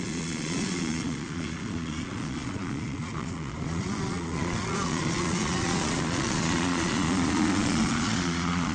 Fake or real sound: fake